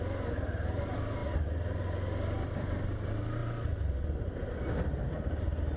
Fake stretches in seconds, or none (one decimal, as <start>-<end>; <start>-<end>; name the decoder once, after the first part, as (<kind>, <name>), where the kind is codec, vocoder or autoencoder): none